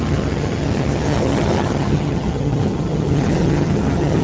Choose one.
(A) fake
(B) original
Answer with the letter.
A